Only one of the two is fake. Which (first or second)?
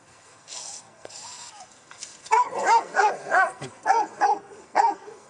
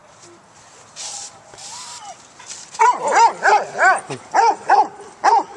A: first